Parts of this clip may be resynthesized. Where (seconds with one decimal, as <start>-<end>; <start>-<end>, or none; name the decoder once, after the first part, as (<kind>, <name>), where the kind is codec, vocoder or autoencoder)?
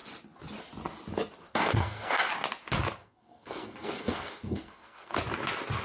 1.5-2.3 (codec, SNAC); 3.0-5.2